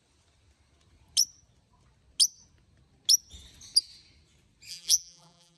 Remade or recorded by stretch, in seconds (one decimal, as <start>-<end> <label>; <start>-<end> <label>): 0.0-4.7 recorded; 4.7-5.6 remade